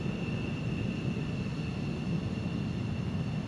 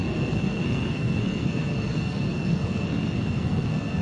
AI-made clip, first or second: second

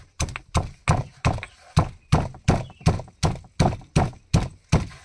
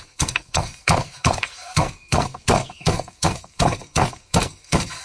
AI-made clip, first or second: second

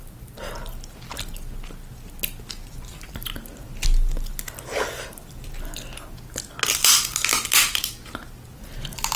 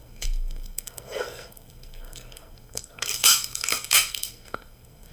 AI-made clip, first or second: second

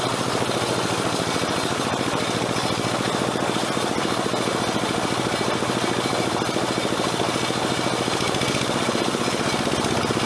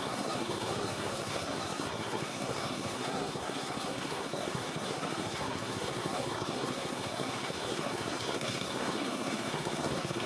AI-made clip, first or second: second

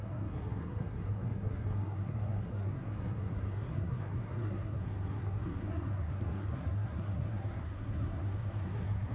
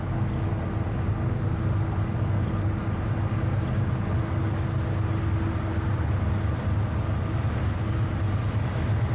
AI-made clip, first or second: first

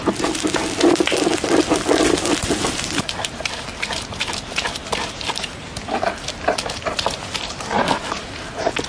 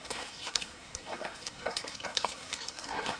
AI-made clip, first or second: second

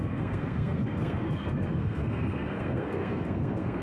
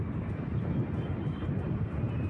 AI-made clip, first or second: first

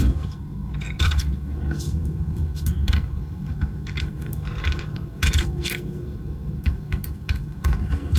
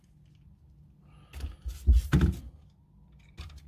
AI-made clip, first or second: first